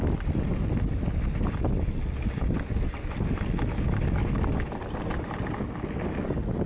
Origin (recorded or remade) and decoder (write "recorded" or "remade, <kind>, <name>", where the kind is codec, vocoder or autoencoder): recorded